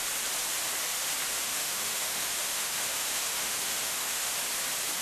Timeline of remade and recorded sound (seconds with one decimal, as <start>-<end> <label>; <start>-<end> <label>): 0.0-1.3 recorded; 1.3-4.3 remade; 4.3-5.0 recorded